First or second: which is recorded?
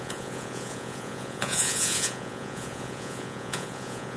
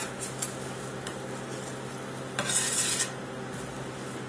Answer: second